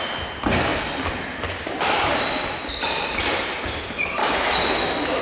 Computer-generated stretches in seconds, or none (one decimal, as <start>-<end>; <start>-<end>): 4.2-5.2